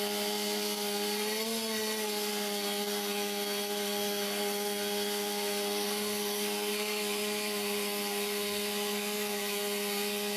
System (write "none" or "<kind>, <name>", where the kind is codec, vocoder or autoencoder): codec, SNAC